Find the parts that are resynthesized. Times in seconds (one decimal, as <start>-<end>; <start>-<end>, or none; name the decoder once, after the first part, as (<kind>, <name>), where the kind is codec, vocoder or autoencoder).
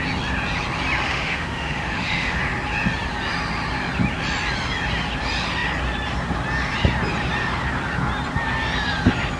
1.0-2.4 (autoencoder, DAC-VAE)